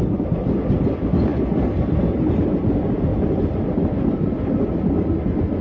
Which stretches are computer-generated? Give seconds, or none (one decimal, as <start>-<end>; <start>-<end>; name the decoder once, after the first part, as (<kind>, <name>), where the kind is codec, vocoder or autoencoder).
none